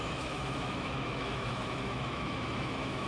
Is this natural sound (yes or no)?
no